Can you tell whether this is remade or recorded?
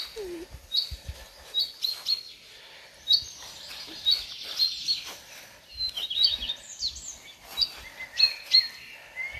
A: recorded